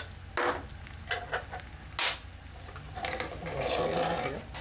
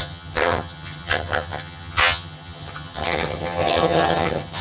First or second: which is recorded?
first